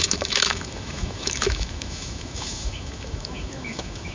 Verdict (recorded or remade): remade